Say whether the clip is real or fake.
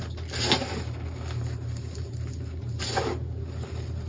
real